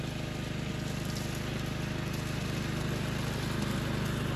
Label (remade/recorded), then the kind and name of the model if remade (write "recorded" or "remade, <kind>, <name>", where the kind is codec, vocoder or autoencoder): recorded